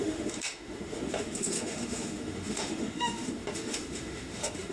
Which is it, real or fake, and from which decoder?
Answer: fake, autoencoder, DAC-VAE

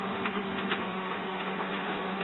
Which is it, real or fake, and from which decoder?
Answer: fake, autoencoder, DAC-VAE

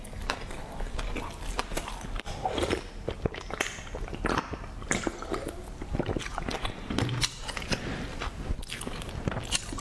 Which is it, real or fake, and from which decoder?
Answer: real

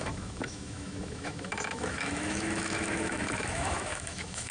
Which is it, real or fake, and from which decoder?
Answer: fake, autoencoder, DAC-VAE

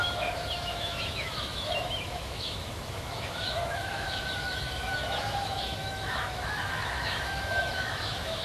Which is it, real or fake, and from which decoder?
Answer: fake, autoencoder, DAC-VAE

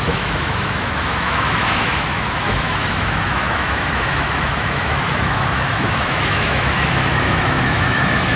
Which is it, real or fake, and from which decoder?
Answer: fake, autoencoder, DAC-VAE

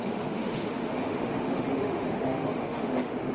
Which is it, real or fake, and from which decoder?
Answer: fake, autoencoder, DAC-VAE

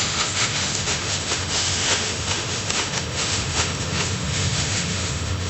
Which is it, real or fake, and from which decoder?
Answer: fake, autoencoder, DAC-VAE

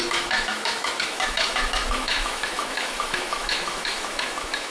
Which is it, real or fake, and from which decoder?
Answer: fake, autoencoder, DAC-VAE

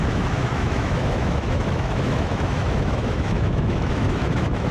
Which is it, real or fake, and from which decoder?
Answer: fake, autoencoder, DAC-VAE